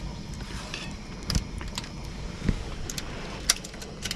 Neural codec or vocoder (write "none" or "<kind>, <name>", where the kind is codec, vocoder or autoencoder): none